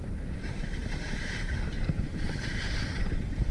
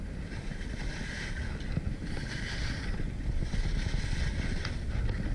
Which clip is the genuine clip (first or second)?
second